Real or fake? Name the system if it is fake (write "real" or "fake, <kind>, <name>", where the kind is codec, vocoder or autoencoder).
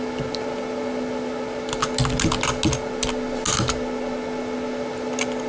real